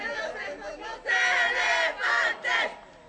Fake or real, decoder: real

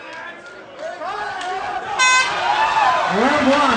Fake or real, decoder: real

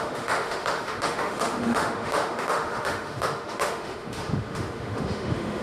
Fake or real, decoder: fake, autoencoder, DAC-VAE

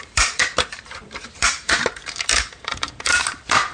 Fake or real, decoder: fake, vocoder, BigVGAN v2